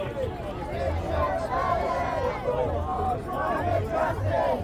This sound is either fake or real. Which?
fake